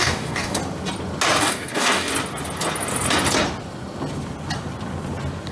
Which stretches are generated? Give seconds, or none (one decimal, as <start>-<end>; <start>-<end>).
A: 0.0-0.6; 1.4-2.1